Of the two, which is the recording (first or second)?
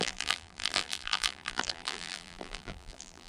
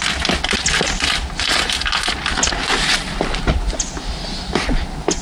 second